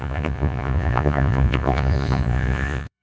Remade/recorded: remade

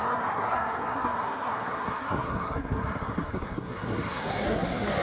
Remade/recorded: remade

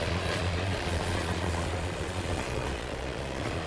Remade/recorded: remade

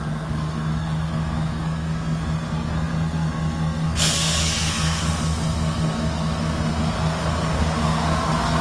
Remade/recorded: remade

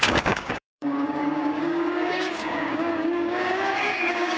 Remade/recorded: remade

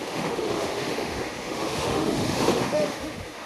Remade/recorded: remade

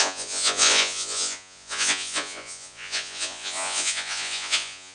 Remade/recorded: remade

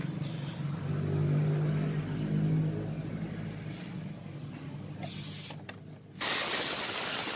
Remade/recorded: recorded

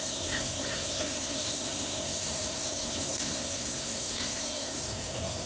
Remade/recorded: remade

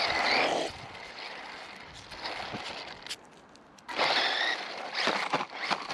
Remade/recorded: recorded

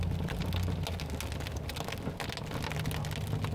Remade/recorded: recorded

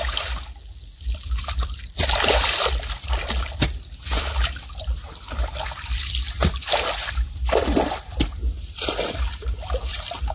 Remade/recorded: recorded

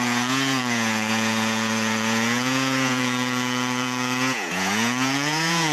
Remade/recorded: remade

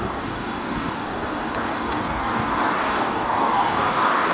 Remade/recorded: remade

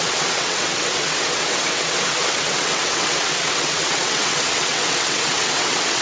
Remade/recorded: remade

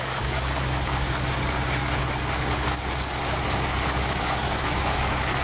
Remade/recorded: remade